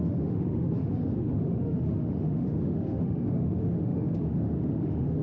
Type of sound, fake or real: fake